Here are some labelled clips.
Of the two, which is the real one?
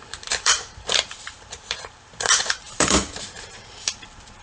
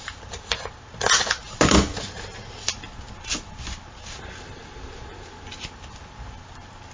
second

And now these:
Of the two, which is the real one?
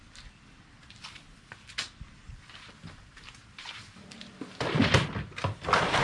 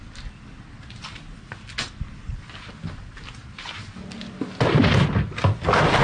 second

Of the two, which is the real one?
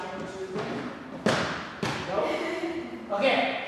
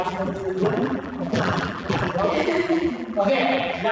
first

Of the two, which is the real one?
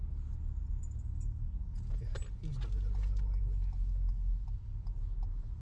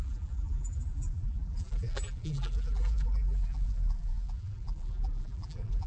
first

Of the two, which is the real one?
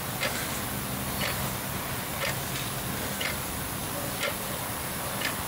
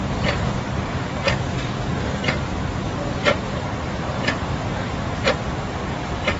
first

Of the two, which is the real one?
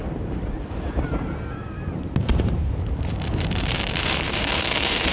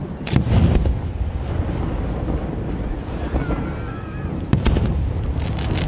second